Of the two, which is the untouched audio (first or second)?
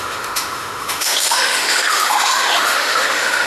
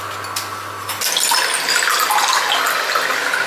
second